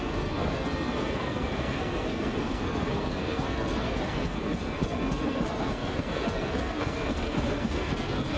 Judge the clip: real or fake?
fake